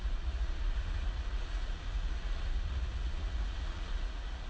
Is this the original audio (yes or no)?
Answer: no